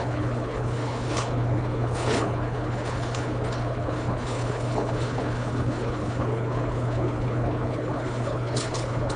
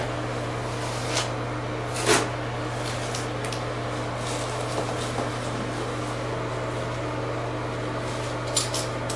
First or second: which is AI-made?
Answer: first